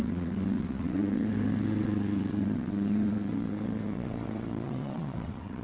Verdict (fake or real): fake